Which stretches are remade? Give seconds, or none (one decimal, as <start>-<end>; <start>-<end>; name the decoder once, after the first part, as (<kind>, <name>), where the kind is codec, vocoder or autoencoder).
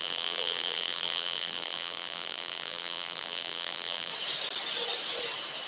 0.0-4.1 (vocoder, BigVGAN v2)